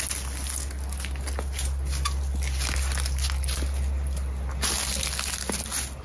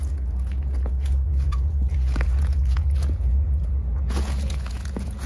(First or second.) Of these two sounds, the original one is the first